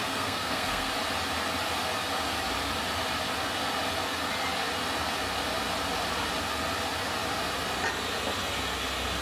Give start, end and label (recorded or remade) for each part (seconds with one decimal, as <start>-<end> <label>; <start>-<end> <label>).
0.0-0.9 remade; 0.9-9.2 recorded